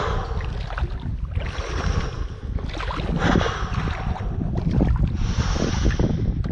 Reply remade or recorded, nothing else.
recorded